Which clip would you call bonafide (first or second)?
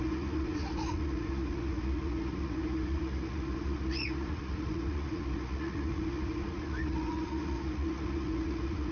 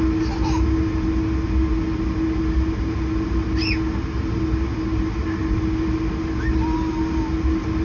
second